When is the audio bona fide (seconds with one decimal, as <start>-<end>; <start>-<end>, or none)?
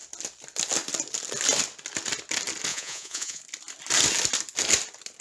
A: 0.0-2.7; 3.4-5.2